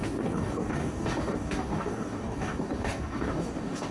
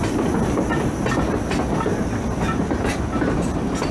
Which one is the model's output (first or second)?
first